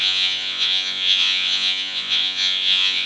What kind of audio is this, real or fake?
fake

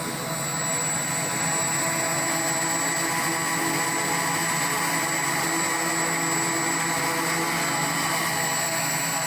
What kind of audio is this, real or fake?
real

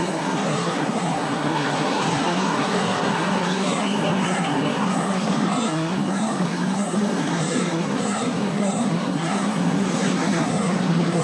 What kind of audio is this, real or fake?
fake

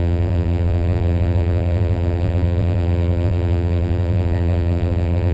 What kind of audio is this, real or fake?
fake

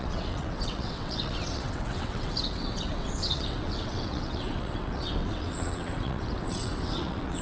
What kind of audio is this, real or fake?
fake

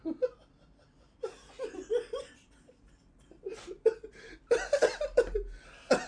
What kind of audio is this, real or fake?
real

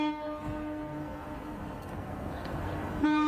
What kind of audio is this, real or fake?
fake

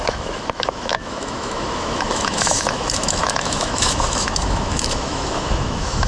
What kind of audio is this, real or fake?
fake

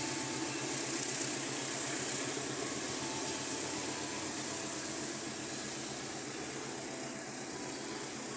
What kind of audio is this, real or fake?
real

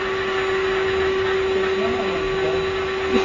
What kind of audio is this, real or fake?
real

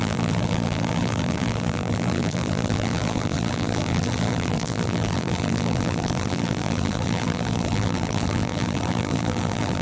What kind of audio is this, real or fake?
fake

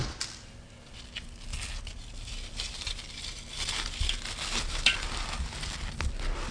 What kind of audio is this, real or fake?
real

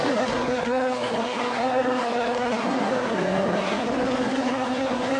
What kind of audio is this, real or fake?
fake